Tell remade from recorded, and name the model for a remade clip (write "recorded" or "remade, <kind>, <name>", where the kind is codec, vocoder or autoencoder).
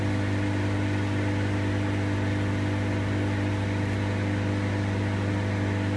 recorded